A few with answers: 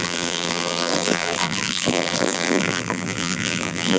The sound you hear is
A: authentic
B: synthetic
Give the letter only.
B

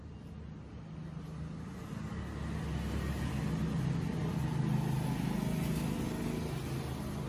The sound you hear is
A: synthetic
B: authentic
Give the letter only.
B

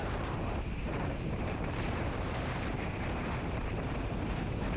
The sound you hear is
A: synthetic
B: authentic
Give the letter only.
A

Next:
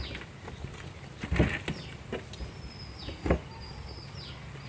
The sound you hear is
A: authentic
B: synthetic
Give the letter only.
A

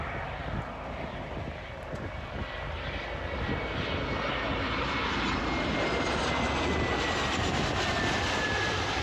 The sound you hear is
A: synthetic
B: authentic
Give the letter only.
B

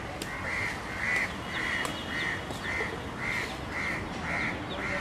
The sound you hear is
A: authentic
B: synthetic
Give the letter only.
A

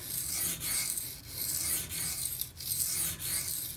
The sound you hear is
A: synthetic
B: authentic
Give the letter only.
B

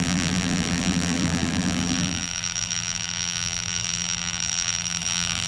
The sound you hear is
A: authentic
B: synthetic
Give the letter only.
B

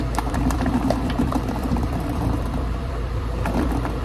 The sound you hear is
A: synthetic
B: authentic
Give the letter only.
A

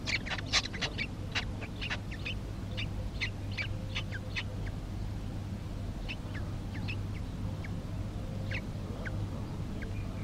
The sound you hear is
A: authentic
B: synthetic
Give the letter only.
A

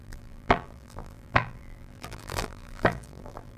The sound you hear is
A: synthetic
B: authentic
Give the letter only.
A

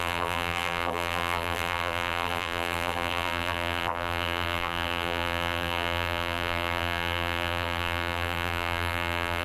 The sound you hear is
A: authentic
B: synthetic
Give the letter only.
B